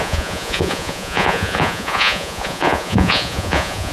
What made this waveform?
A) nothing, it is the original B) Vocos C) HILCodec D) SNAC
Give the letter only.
B